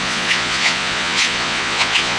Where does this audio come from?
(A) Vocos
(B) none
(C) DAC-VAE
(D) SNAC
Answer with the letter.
A